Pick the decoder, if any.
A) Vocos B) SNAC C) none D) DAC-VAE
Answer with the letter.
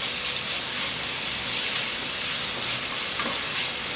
C